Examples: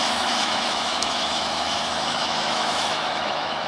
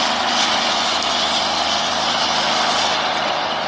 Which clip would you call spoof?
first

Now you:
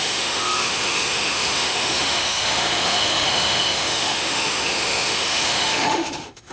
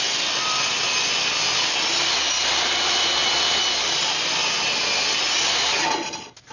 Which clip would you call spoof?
first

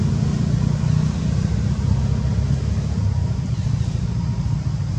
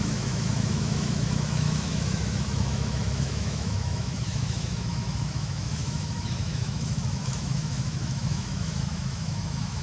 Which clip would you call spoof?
second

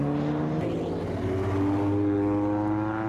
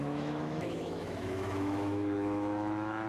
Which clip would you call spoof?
second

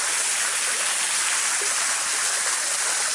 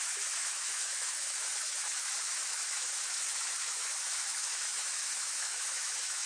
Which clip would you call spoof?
second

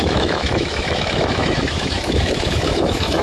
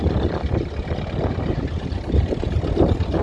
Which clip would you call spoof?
first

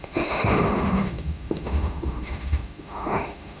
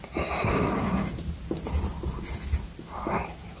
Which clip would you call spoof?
first